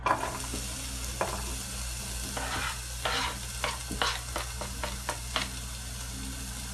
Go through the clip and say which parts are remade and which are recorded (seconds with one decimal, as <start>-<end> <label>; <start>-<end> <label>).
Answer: 0.0-6.7 recorded